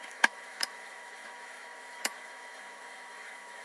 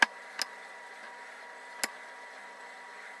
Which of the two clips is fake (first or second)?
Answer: first